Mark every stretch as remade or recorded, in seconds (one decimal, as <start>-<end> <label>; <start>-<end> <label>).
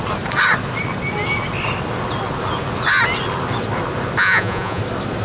0.0-4.2 recorded; 4.2-4.8 remade; 4.8-5.2 recorded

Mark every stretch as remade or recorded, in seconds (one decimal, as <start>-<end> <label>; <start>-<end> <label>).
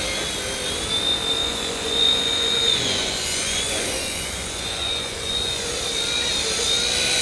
0.0-1.4 recorded; 1.4-5.7 remade; 5.7-7.2 recorded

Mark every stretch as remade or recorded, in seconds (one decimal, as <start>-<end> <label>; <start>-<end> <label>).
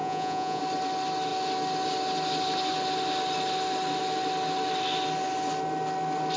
0.0-0.6 remade; 0.6-6.4 recorded